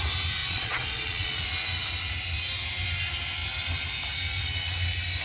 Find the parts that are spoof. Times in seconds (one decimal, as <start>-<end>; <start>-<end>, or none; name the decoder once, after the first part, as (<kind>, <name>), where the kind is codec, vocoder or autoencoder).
0.4-1.4 (vocoder, Vocos)